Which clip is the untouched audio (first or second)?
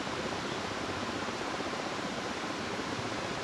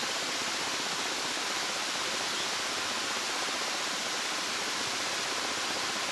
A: second